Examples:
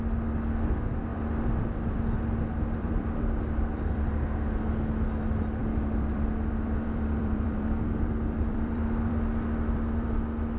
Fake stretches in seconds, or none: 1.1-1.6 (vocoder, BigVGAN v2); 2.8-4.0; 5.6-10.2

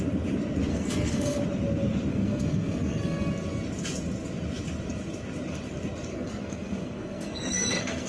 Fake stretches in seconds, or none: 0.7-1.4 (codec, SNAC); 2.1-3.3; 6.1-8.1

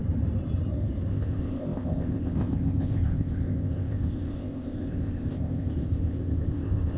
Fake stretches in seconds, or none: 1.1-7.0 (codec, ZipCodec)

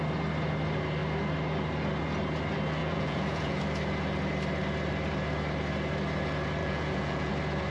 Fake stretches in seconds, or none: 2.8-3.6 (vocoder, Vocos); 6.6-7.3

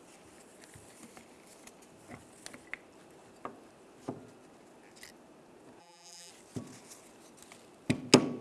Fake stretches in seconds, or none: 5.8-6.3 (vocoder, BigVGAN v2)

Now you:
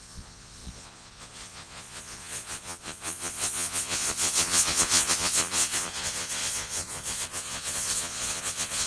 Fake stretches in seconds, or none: 0.0-8.9 (vocoder, Vocos)